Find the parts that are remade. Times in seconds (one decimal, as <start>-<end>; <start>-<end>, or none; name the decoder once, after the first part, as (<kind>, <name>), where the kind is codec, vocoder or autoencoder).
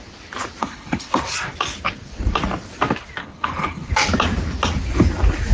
0.6-1.1 (codec, HILCodec); 3.2-3.9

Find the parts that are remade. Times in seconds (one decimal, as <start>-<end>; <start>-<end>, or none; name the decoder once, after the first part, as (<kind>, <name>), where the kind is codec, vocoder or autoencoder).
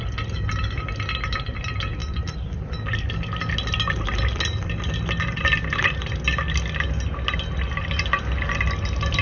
none